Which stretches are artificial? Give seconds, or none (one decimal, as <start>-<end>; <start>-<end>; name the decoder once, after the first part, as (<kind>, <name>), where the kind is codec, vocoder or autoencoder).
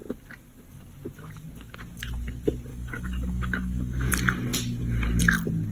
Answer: 2.7-4.1 (codec, DAC)